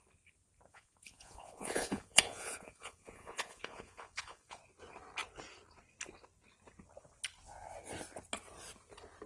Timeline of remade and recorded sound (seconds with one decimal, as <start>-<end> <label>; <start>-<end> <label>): 0.0-0.7 recorded; 0.7-4.6 remade; 4.6-9.3 recorded